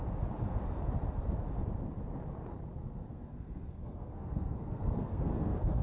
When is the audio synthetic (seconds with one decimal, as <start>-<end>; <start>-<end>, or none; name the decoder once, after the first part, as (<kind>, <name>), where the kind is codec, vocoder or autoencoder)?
2.8-5.8 (codec, SNAC)